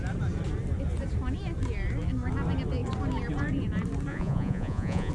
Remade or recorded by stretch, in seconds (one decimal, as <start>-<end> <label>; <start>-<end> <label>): 0.0-4.1 recorded; 4.1-5.1 remade